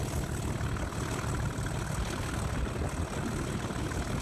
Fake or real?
real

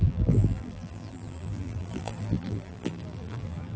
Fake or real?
fake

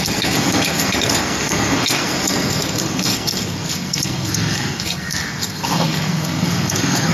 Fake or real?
fake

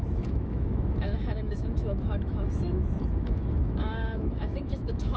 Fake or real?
fake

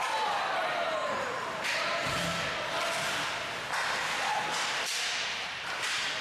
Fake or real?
real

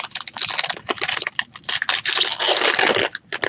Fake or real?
real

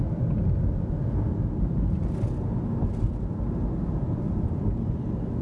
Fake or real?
real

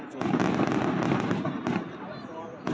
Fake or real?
real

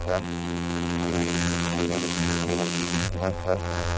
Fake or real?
fake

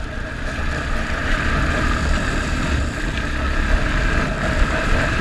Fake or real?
real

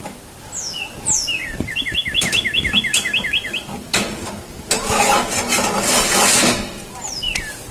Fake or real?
real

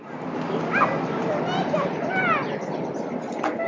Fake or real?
real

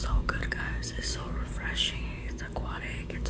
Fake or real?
fake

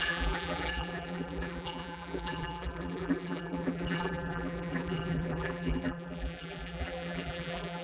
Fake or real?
fake